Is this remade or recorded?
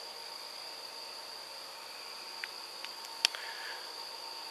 recorded